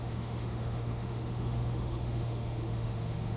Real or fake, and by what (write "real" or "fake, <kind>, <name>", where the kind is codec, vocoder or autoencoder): fake, autoencoder, DAC-VAE